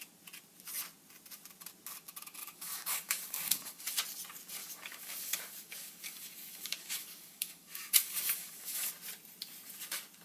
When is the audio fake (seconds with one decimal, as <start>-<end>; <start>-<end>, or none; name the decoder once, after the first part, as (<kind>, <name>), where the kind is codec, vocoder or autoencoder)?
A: 2.4-3.8 (codec, DAC); 4.6-8.9